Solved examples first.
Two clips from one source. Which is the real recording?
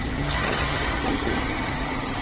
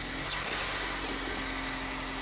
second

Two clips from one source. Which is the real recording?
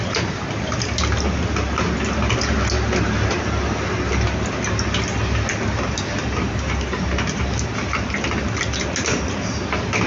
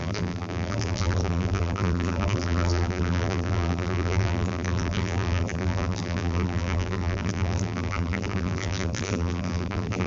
first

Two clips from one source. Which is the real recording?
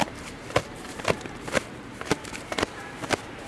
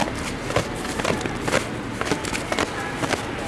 second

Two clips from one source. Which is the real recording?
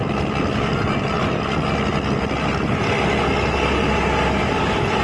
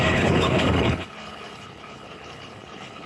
first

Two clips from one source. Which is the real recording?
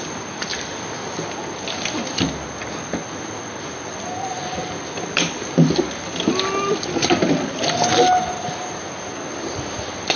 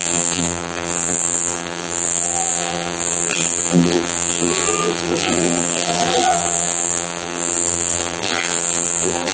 first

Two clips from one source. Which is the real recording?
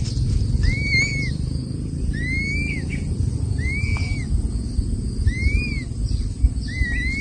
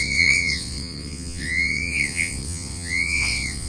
first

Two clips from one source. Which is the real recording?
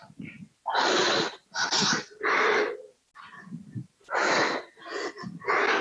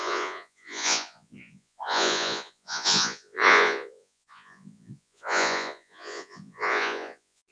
first